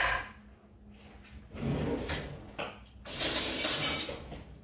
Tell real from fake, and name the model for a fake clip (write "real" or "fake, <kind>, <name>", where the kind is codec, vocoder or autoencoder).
real